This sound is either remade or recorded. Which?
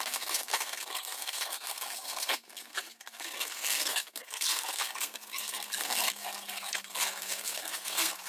remade